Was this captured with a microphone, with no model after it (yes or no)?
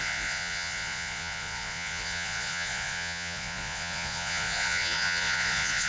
no